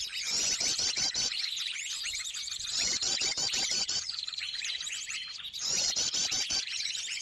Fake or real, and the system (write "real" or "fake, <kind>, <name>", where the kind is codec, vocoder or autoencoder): fake, vocoder, Vocos